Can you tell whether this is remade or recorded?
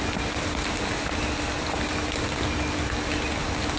recorded